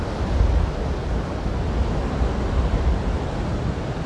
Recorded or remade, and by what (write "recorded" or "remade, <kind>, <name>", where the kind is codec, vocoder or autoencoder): recorded